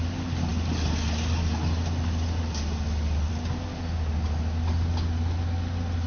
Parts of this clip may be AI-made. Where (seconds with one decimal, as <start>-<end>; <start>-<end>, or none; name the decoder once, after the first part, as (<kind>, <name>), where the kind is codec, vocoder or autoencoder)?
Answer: none